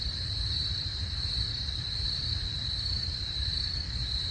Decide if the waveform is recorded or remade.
remade